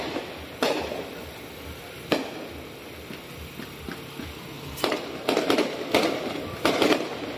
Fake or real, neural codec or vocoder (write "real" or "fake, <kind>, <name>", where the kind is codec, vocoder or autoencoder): real